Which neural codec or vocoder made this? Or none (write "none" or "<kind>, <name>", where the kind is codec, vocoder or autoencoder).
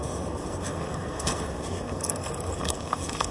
codec, SNAC